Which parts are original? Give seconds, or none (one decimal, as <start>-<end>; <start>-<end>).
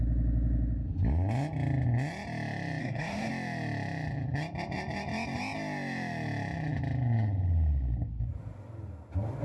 0.0-2.8; 3.3-9.4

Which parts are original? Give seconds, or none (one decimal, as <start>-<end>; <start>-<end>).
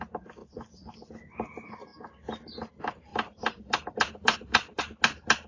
0.0-0.4; 1.1-3.1; 4.8-5.5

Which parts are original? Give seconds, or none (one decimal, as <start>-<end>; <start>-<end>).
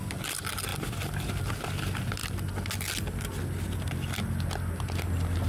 0.0-5.5